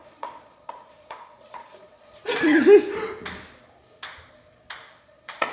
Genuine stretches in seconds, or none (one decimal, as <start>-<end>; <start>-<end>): 2.2-5.0